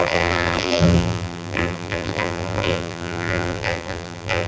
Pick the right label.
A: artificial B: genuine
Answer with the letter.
A